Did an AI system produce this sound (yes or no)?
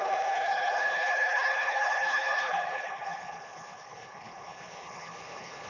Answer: yes